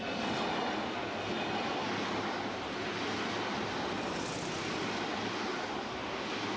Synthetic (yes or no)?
no